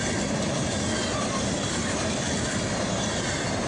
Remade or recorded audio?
recorded